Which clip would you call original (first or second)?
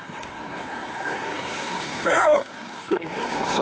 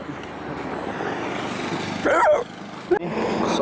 second